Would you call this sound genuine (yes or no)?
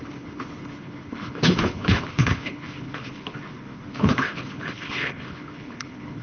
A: no